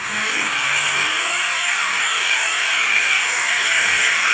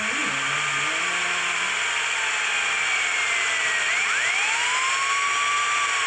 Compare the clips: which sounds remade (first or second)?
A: first